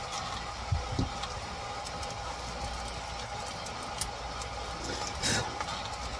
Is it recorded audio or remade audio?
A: recorded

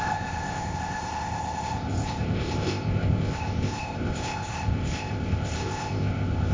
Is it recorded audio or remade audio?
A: remade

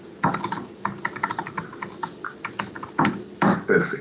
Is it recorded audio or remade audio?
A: recorded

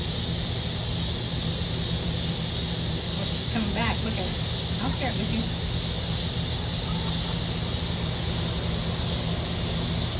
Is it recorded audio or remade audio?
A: recorded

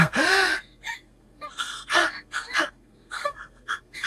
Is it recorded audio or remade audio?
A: remade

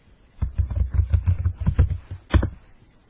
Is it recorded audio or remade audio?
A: recorded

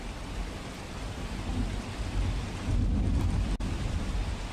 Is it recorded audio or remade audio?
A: recorded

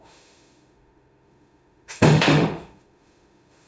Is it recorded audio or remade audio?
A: remade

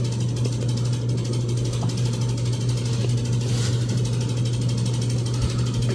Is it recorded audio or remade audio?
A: recorded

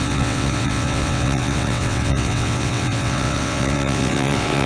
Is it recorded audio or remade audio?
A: remade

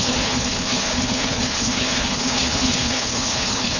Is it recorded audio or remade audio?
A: remade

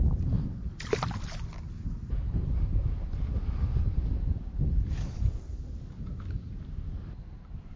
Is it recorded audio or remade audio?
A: recorded